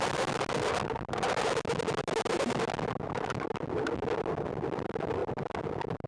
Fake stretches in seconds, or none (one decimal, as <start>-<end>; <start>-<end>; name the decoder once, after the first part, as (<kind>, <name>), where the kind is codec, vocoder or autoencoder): none